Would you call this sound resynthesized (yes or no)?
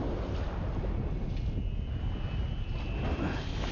no